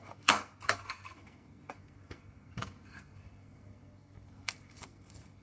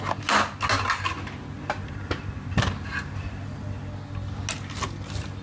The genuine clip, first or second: second